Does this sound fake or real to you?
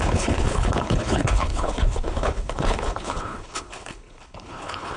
fake